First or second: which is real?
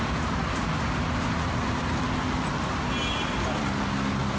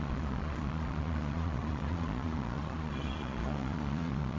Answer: first